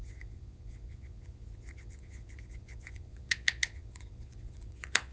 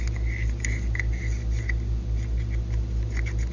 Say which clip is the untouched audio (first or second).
second